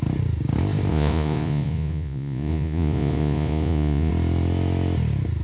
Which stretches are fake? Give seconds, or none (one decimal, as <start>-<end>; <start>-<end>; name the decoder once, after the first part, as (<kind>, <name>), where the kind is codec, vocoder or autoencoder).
0.9-4.1 (vocoder, Vocos)